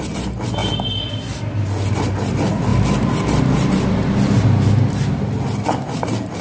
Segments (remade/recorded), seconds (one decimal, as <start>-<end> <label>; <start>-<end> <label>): 0.0-6.4 recorded